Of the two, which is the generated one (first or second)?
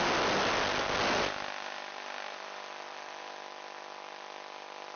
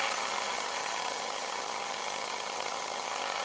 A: second